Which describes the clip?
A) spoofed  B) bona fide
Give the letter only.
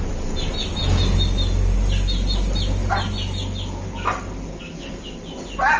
B